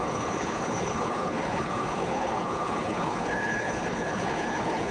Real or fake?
fake